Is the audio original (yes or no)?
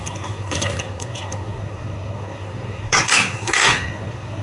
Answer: no